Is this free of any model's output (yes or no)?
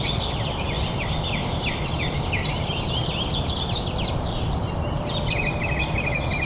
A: no